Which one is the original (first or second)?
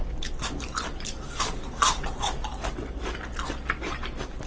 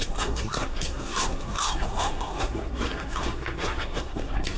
first